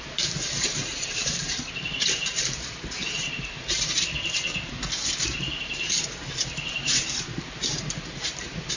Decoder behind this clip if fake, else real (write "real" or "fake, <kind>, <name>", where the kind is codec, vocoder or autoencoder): fake, vocoder, BigVGAN v2